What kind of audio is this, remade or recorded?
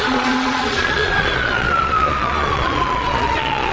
remade